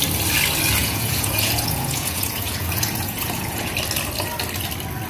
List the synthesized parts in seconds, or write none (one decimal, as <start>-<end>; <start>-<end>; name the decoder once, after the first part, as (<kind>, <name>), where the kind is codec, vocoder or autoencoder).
0.8-3.7 (vocoder, Vocos)